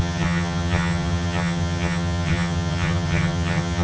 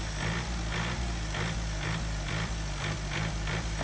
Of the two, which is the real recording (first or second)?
second